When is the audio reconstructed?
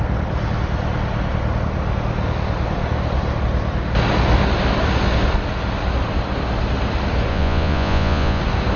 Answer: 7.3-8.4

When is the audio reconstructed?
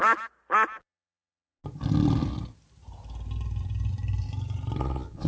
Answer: 0.8-1.6; 4.8-5.3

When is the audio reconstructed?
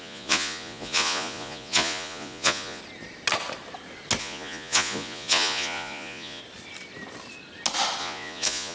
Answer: 0.0-2.8; 4.2-6.4; 8.0-8.7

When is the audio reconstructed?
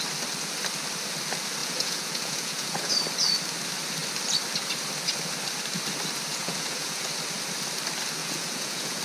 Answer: 1.6-2.9; 6.3-7.1; 8.2-9.0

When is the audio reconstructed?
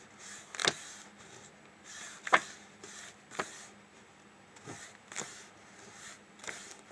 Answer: none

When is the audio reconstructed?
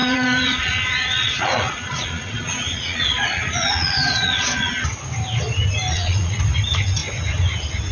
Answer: 0.0-4.7; 5.9-6.4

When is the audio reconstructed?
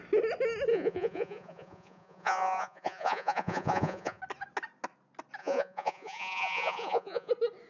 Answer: 0.7-4.2; 5.4-7.3